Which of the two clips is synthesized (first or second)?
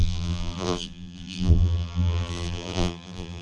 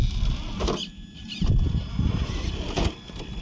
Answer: first